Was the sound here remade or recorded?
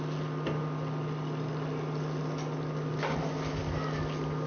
recorded